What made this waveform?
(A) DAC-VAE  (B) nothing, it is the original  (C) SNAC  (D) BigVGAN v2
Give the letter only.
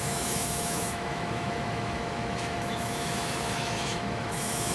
A